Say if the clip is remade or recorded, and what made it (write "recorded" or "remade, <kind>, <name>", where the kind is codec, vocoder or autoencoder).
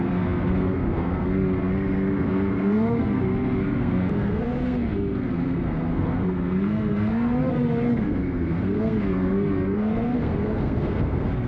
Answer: remade, codec, SNAC